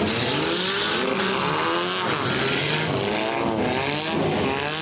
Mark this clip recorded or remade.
recorded